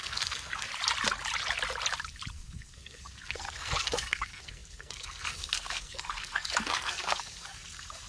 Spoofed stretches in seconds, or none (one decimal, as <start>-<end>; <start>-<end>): 0.0-0.7; 2.3-8.1